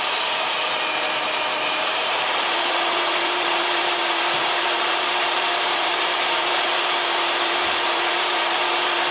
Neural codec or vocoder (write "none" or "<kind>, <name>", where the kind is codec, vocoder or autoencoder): vocoder, BigVGAN v2